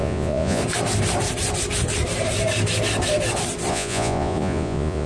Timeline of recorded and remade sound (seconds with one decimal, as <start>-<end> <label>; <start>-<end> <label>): 0.0-0.6 remade; 0.6-3.7 recorded; 3.7-5.1 remade